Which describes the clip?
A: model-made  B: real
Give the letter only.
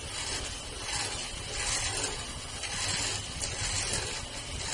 B